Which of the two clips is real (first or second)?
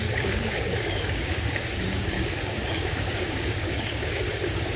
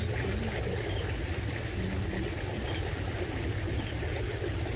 second